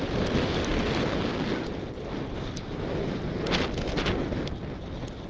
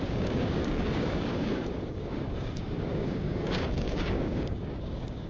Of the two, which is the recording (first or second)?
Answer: first